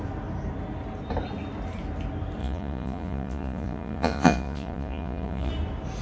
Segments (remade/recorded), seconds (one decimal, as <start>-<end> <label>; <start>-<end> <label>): 0.0-2.4 recorded; 2.4-5.5 remade; 5.5-6.0 recorded